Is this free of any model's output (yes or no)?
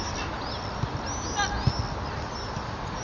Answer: yes